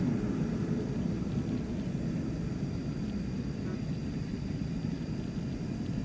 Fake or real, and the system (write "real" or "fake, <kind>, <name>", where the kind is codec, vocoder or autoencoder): real